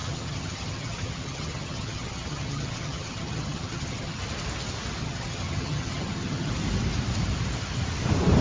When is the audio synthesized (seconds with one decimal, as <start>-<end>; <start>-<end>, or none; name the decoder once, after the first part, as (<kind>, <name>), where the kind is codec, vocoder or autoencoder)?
0.0-4.2 (vocoder, HiFi-GAN); 5.0-6.5